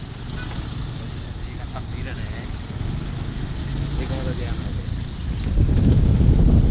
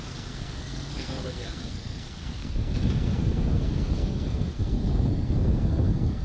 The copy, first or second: second